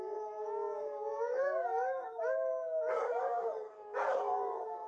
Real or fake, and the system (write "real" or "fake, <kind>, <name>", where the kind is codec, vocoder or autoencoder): fake, codec, DAC